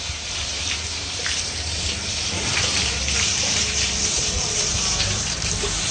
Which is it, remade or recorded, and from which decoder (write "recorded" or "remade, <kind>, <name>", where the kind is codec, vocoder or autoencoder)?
remade, vocoder, BigVGAN v2